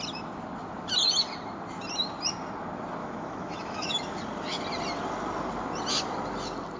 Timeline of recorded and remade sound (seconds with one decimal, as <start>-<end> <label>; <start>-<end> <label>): 0.0-3.0 recorded; 3.0-4.2 remade; 4.2-6.8 recorded